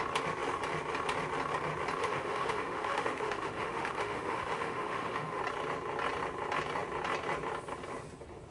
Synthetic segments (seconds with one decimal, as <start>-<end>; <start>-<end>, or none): 2.0-5.4